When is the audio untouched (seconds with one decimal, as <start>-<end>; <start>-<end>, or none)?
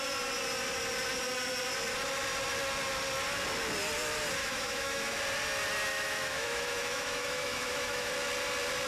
0.0-4.4; 5.2-5.9; 8.1-8.9